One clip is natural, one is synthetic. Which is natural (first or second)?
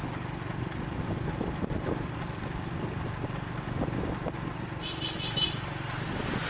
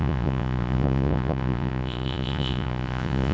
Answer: first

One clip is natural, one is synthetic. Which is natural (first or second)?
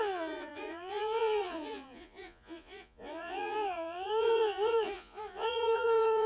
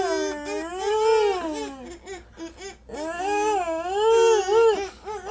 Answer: second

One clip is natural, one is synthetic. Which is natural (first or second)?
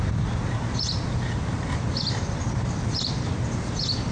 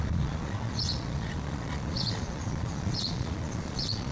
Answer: first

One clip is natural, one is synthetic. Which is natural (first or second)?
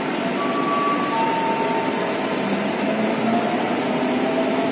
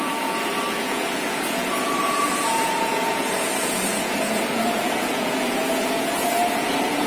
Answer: first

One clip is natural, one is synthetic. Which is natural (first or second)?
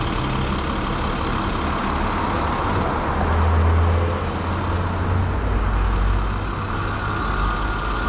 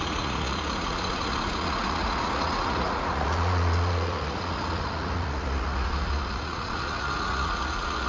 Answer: first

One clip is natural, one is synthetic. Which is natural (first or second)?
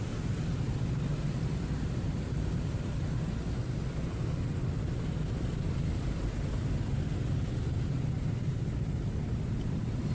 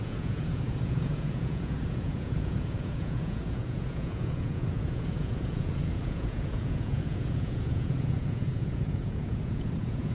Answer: first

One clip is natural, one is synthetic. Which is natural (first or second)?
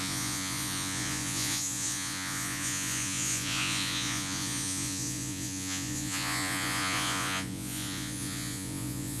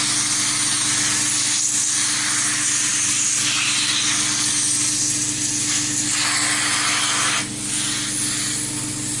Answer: second